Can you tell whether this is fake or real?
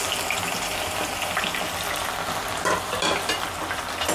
real